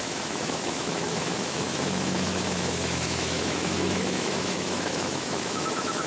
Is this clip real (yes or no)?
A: no